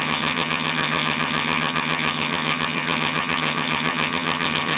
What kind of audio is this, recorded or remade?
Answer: remade